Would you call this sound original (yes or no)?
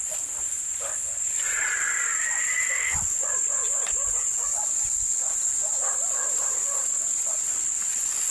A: yes